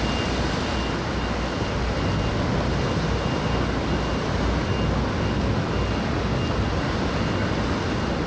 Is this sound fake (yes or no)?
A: no